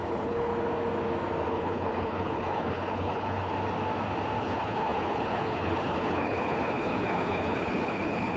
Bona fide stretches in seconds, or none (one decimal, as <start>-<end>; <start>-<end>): 0.5-1.5; 3.5-4.4